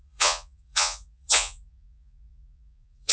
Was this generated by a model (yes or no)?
yes